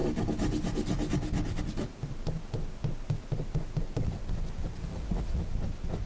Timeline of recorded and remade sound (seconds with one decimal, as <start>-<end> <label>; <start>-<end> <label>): 0.0-4.9 recorded; 4.9-5.4 remade; 5.4-6.1 recorded